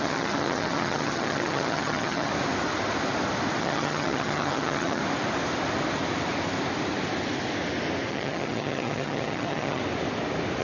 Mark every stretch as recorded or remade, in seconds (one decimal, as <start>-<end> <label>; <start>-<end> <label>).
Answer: 0.0-2.3 remade; 2.3-3.6 recorded; 3.6-5.0 remade; 5.0-8.1 recorded; 8.1-9.8 remade; 9.8-10.6 recorded